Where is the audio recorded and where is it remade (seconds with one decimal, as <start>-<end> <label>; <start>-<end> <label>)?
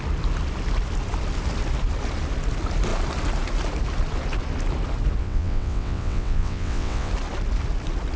0.0-5.2 recorded; 5.2-7.1 remade; 7.1-8.2 recorded